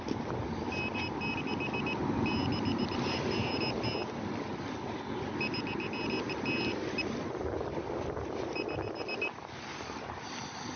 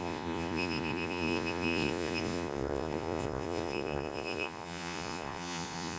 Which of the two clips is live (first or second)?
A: first